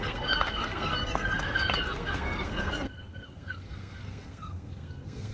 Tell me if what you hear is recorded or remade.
remade